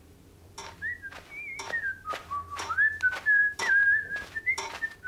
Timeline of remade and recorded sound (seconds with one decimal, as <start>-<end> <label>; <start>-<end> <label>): 0.0-5.1 recorded